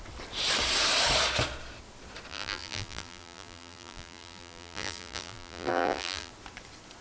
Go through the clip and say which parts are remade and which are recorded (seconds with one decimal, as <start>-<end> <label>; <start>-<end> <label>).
0.0-2.3 recorded; 2.3-6.3 remade; 6.3-7.0 recorded